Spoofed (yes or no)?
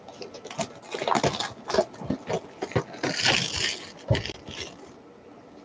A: no